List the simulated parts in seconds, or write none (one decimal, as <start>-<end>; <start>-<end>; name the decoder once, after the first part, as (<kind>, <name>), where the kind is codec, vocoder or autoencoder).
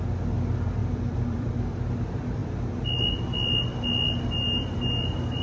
0.8-1.6 (vocoder, BigVGAN v2)